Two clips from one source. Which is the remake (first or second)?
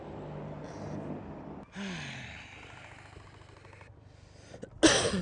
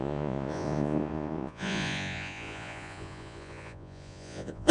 second